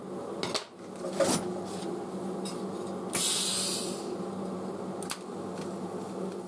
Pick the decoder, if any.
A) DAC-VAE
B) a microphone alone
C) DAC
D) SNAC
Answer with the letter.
B